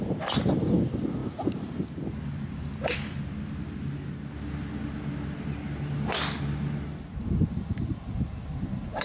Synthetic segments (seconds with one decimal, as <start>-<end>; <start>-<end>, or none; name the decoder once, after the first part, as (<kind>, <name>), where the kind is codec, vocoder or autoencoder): none